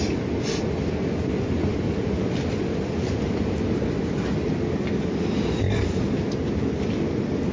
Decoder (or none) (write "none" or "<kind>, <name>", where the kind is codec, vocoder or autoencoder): none